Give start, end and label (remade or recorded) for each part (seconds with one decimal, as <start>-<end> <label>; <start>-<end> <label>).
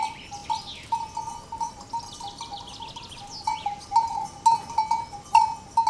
0.0-5.9 recorded